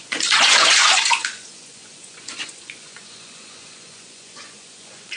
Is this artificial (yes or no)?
yes